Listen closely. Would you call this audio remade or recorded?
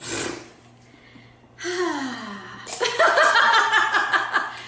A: recorded